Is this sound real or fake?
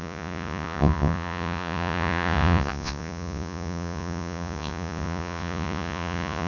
fake